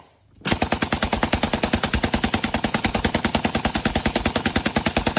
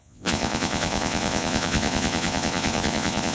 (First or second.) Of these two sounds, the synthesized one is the second